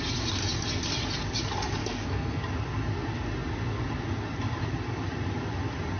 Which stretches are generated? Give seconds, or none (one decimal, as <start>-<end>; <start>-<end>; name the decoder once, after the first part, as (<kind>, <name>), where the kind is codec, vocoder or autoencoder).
1.8-2.4 (codec, SNAC)